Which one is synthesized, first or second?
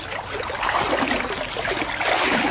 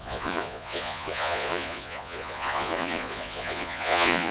second